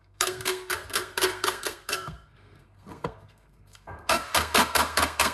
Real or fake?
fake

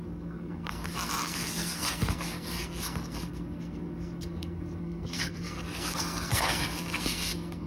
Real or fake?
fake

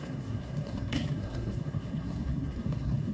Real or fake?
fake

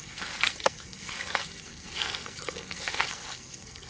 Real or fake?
fake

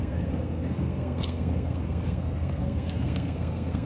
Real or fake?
fake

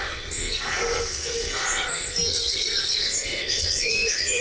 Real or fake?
fake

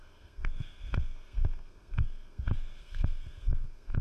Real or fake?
fake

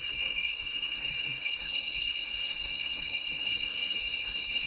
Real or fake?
fake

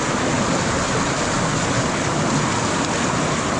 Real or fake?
real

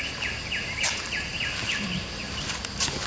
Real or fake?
real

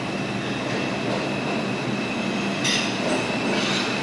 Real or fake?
real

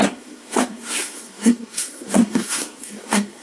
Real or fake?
fake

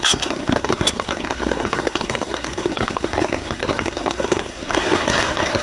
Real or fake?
fake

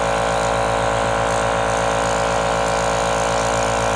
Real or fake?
real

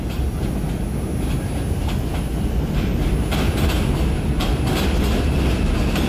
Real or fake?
real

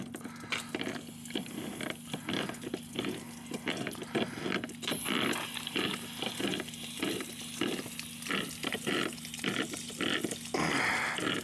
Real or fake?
real